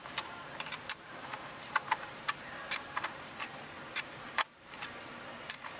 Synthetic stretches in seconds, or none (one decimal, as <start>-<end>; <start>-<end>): 0.0-3.3